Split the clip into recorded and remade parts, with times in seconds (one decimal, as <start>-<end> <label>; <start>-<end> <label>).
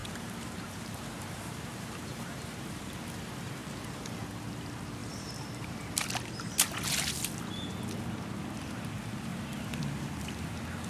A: 0.0-2.9 remade; 2.9-5.0 recorded; 5.0-6.1 remade; 6.1-10.9 recorded